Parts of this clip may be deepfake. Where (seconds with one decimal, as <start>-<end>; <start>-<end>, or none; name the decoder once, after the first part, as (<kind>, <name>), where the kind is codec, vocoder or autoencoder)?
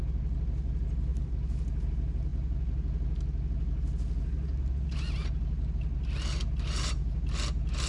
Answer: none